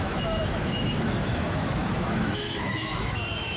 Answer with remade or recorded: remade